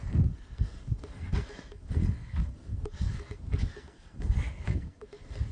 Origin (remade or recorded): remade